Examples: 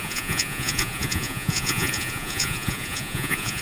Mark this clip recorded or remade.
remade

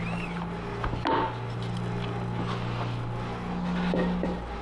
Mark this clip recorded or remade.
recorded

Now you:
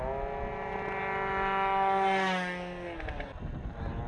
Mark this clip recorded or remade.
recorded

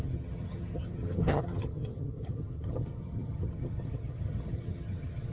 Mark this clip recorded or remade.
remade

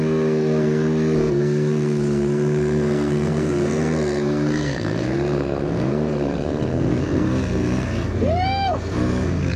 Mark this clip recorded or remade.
remade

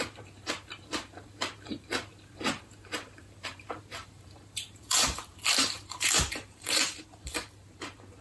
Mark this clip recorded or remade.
remade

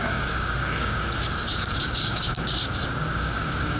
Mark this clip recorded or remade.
remade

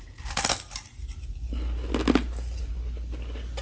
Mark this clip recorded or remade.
recorded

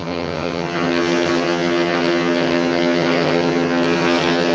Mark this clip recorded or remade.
remade